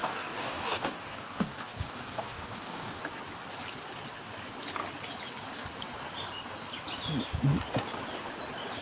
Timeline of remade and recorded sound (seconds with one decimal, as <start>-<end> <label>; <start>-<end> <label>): 0.0-3.0 remade; 3.0-8.8 recorded